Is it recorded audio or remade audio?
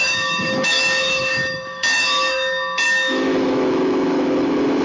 remade